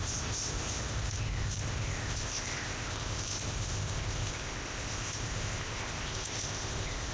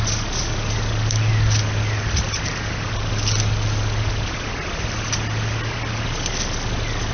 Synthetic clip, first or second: first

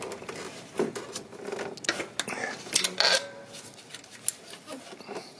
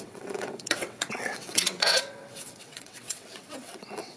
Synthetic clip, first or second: second